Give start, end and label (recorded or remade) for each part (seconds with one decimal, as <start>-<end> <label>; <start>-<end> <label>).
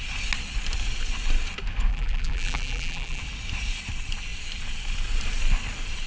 0.0-1.9 recorded; 1.9-3.2 remade; 3.2-6.1 recorded